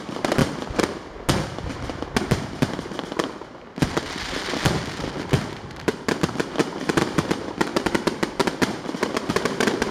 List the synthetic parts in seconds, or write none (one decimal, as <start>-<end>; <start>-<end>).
0.0-0.4; 5.5-5.9; 6.7-9.9